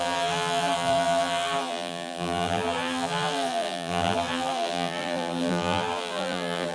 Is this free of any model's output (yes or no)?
no